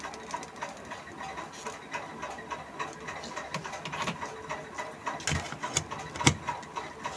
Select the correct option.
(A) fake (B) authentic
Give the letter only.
B